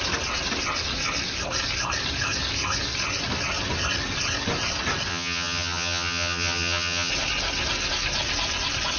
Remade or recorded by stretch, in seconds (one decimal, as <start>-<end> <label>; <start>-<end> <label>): 0.0-5.1 recorded; 5.1-7.1 remade; 7.1-9.0 recorded

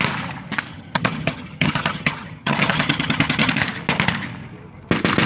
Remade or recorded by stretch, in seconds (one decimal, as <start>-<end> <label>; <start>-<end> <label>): 0.0-0.7 recorded; 0.7-3.5 remade; 3.5-5.3 recorded

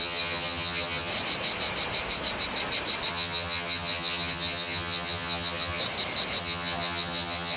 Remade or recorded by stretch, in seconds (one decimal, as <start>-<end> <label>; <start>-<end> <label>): 0.0-1.1 remade; 1.1-3.1 recorded; 3.1-5.8 remade; 5.8-6.4 recorded; 6.4-7.6 remade

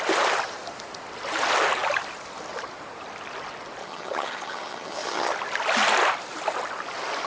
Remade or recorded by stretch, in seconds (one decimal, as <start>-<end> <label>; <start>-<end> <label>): 0.0-3.8 recorded; 3.8-5.3 remade; 5.3-7.3 recorded